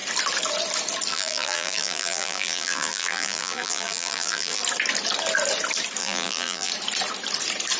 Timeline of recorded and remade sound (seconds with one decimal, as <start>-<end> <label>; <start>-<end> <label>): 0.0-1.1 recorded; 1.1-4.6 remade; 4.6-6.0 recorded; 6.0-6.7 remade; 6.7-7.8 recorded